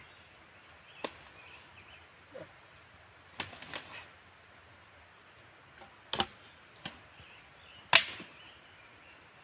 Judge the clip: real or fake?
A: real